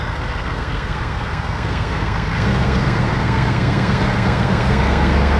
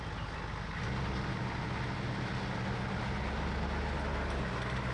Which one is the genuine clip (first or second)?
second